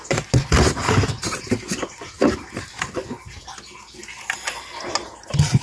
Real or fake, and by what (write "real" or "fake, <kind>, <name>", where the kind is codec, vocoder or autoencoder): real